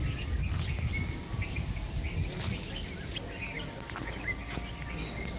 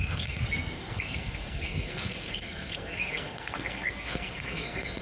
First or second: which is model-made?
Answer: second